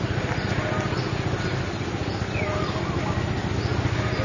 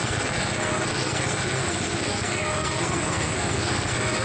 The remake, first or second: second